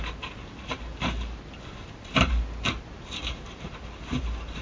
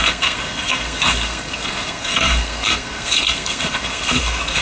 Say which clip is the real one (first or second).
first